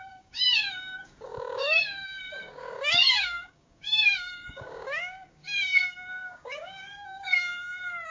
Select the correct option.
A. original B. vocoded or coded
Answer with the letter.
B